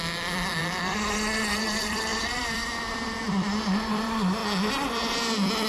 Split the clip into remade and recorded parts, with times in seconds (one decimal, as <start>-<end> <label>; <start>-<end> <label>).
0.0-4.4 remade; 4.4-4.9 recorded; 4.9-5.7 remade